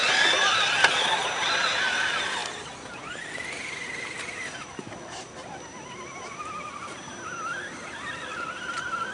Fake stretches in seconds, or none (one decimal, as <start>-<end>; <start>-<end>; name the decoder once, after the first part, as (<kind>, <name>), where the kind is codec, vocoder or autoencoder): 1.8-2.4 (vocoder, BigVGAN v2); 6.7-9.1